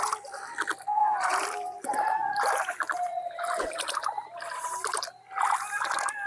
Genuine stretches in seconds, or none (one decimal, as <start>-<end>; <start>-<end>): 0.0-1.3; 5.1-6.3